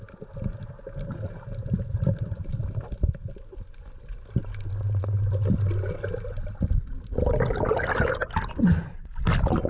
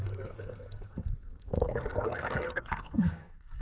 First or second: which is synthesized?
second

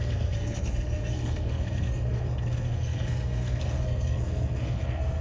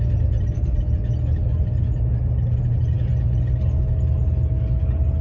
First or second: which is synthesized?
first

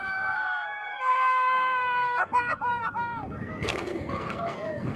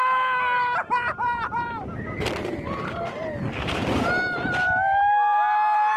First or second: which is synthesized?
first